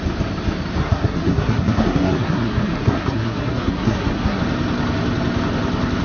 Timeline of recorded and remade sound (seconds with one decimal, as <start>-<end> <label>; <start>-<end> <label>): 0.0-0.8 recorded; 0.8-4.4 remade; 4.4-6.0 recorded